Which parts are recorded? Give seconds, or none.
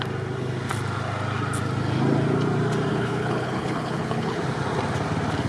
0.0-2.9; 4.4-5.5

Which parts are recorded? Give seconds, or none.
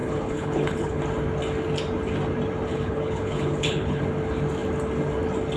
1.0-2.7; 4.0-5.6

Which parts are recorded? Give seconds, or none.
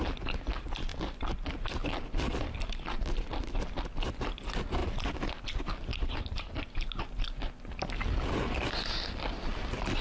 0.0-10.0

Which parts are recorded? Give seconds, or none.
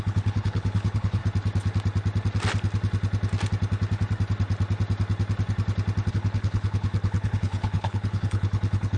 1.2-6.1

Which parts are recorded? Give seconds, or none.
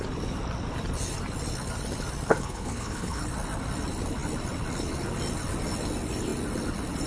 0.0-2.3; 3.2-7.1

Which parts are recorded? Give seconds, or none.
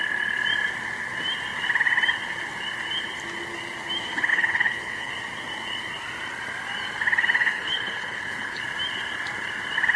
0.0-4.3; 5.1-7.4; 8.6-10.0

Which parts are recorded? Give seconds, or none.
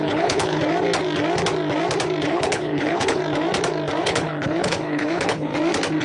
0.6-2.3; 3.2-4.0; 5.5-6.0